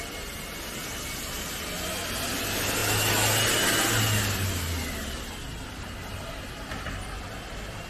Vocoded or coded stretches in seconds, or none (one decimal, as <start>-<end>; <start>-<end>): none